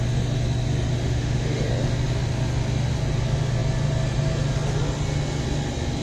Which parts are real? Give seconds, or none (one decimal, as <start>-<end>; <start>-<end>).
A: 0.0-0.9; 1.7-6.0